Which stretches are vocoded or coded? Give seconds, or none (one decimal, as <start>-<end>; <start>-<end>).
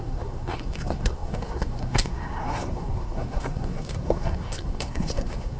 0.0-5.6